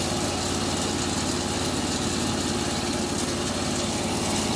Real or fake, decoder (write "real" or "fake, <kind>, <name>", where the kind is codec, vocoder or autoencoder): real